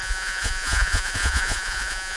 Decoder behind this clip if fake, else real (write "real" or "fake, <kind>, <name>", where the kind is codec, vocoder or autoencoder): fake, vocoder, Vocos